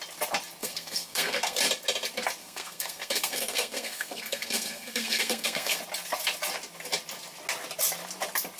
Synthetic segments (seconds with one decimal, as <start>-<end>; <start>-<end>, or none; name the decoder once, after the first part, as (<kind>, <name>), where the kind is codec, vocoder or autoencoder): 0.6-1.6 (codec, SNAC); 2.4-5.8